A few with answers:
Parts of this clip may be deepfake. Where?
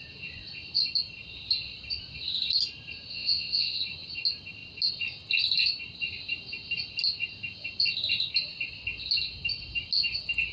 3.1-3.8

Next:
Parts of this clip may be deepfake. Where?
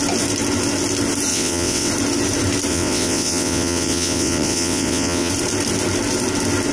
1.3-1.9; 2.7-5.3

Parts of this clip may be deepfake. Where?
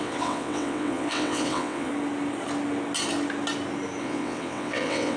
0.0-1.9; 4.0-5.2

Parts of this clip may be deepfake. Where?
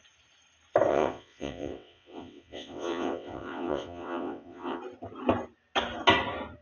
0.9-4.8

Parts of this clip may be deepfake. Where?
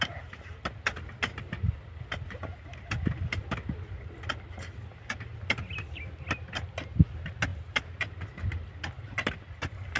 none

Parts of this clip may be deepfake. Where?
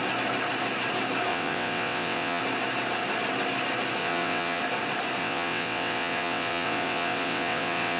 1.3-2.4; 4.0-4.6; 5.2-8.0